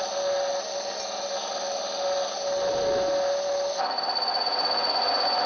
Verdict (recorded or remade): recorded